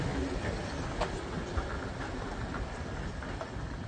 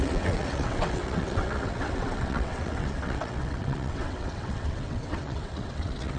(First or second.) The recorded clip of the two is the first